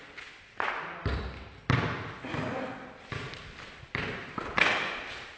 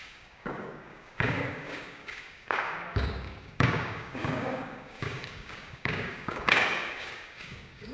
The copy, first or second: second